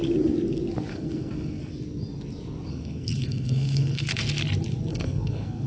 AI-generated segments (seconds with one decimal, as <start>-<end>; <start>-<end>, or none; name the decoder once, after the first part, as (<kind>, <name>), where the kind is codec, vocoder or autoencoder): 0.9-1.7 (codec, SNAC); 2.7-4.1; 4.9-5.7